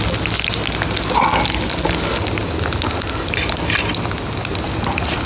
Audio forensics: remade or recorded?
recorded